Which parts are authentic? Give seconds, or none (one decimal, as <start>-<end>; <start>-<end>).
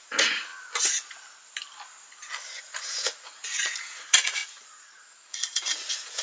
0.5-2.6